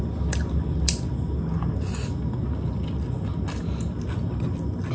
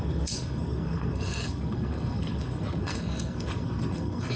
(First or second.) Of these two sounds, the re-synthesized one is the second